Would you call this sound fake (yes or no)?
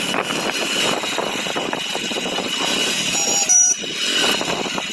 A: no